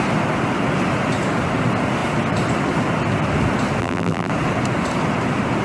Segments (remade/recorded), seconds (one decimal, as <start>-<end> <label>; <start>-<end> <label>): 0.0-3.8 recorded; 3.8-4.3 remade; 4.3-5.6 recorded